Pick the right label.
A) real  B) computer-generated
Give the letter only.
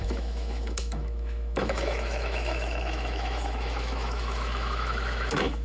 B